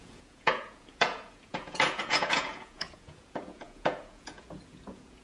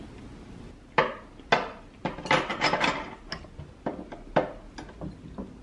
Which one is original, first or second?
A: second